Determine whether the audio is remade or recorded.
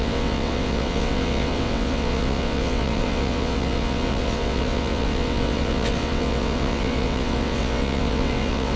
remade